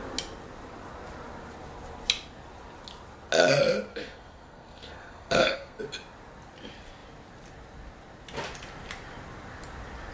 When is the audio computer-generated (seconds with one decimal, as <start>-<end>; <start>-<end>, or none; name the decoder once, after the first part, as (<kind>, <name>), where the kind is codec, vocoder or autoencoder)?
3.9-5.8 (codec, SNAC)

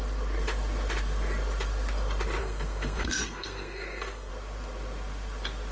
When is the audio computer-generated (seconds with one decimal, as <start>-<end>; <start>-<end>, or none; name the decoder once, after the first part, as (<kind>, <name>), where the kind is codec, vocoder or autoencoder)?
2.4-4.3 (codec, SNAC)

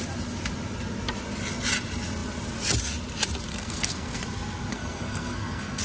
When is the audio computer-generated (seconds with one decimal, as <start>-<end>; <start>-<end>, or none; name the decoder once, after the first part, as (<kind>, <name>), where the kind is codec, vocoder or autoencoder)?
3.5-4.2 (codec, SNAC); 4.7-5.8

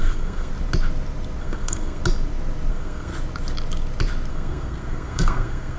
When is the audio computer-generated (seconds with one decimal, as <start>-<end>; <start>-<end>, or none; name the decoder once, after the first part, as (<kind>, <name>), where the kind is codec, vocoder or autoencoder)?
0.0-0.5 (codec, SNAC); 1.4-2.0; 2.7-3.1; 4.3-5.8

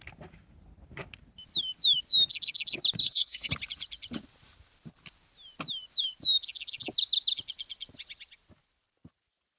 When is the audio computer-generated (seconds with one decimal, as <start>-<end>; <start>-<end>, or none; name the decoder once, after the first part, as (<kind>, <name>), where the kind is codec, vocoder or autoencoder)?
3.0-3.5 (codec, SNAC)

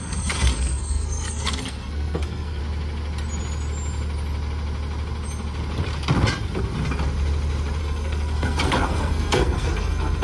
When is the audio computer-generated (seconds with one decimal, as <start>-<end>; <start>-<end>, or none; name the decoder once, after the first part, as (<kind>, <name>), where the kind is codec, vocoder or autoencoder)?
0.0-2.6 (codec, SNAC); 7.8-10.2

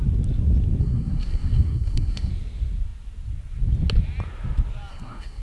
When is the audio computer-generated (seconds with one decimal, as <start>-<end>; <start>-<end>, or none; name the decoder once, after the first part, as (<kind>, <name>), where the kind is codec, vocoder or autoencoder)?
0.8-2.3 (codec, SNAC); 4.9-5.4